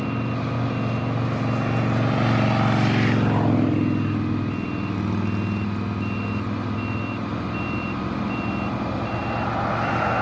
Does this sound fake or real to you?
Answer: real